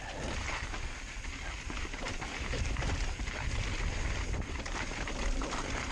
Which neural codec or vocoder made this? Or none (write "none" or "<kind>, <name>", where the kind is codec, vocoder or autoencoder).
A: vocoder, BigVGAN v2